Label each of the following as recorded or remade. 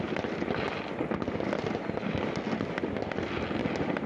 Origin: recorded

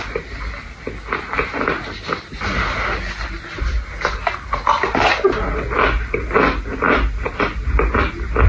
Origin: recorded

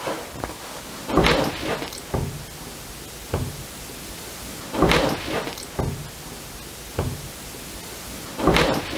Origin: recorded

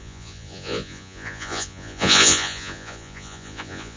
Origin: remade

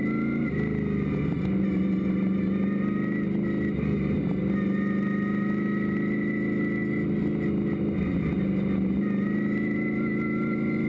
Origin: recorded